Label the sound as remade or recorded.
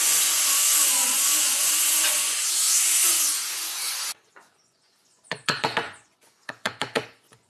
remade